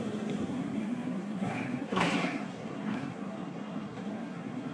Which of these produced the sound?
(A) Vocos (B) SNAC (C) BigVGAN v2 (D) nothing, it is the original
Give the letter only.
B